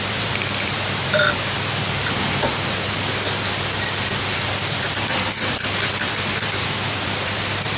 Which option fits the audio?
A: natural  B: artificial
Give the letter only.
B